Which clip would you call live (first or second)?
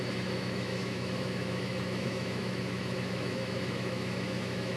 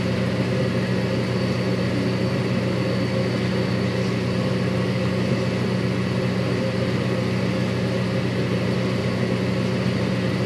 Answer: second